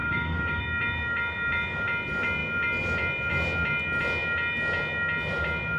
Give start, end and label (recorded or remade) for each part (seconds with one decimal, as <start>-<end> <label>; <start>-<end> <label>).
0.0-0.6 remade; 0.6-5.8 recorded